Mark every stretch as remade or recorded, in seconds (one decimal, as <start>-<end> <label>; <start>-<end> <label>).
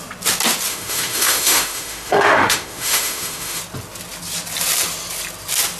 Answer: 0.0-0.7 recorded; 0.7-3.6 remade; 3.6-5.8 recorded